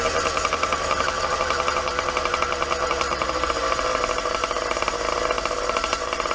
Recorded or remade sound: remade